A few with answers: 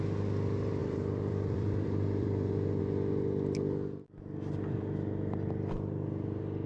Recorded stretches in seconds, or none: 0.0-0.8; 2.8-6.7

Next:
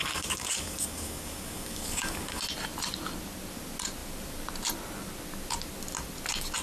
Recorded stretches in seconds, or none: 2.4-6.6